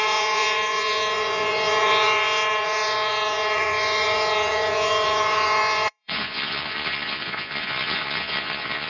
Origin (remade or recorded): remade